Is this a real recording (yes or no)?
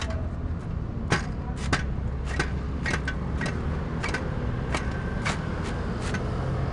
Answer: yes